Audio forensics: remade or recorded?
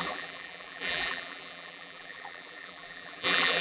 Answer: remade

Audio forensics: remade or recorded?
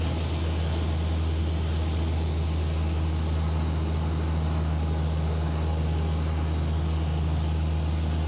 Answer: recorded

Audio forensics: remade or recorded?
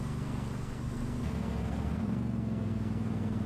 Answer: remade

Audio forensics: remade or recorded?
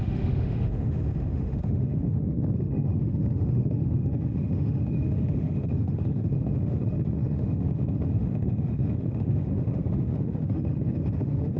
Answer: remade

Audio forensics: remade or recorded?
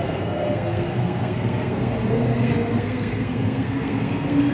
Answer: remade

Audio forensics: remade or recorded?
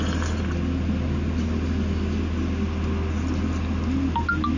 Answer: recorded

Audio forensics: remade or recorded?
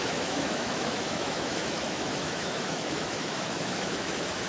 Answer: remade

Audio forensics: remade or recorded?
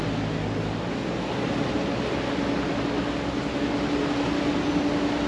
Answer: recorded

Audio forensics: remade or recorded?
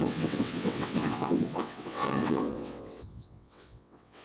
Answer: remade